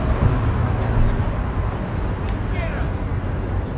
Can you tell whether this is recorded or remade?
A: recorded